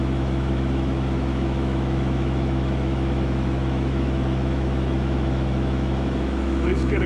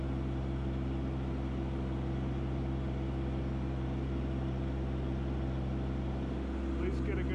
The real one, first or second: second